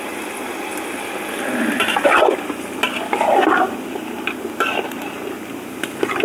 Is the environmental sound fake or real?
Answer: real